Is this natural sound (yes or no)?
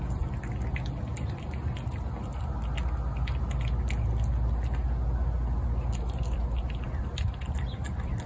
yes